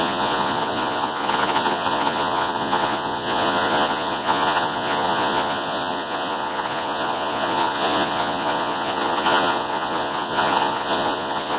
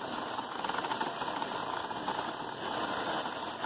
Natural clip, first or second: second